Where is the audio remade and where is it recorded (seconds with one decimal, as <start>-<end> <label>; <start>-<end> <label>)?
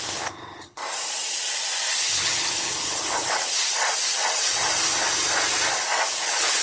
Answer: 0.0-0.8 remade; 0.8-2.0 recorded; 2.0-3.5 remade; 3.5-6.1 recorded; 6.1-6.6 remade